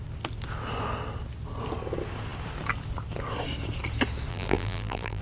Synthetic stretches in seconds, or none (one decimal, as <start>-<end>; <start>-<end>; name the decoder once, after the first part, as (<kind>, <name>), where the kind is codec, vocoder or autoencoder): 4.3-5.2 (vocoder, BigVGAN v2)